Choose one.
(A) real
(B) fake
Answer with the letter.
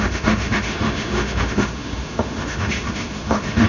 B